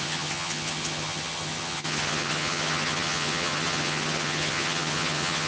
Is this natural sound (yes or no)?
no